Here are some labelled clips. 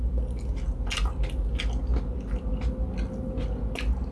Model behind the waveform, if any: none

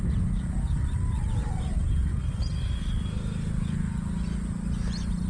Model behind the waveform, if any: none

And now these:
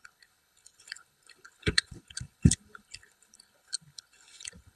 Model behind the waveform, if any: codec, HILCodec